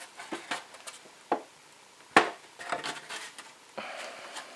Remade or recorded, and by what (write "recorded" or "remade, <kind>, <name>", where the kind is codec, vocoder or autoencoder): recorded